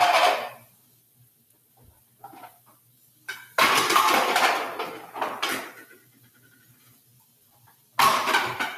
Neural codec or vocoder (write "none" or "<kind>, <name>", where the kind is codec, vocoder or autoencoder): none